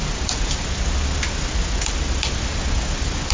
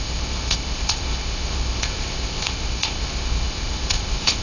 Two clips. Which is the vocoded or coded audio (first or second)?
second